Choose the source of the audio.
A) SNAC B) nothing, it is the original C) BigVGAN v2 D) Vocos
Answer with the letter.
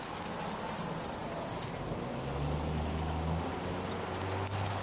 B